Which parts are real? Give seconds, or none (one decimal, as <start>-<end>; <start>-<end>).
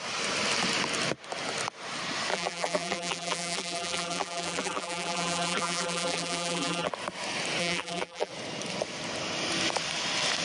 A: 0.0-2.3; 6.9-7.6; 8.3-10.4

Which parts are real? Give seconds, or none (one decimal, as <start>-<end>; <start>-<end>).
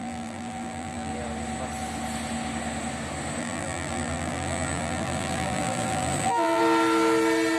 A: 1.1-3.4; 6.6-7.6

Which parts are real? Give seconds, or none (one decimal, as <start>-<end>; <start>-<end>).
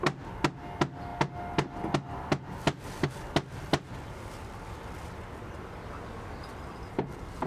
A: 0.0-7.5